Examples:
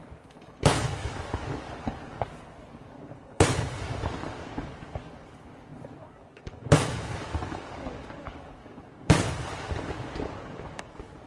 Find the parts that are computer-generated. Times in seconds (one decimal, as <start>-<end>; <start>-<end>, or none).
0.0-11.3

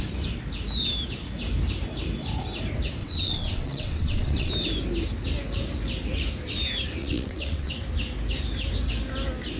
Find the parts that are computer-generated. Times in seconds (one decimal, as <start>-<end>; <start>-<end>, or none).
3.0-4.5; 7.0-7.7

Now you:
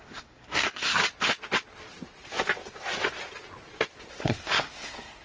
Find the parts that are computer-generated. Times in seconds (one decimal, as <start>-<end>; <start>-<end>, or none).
0.0-1.0; 4.1-5.2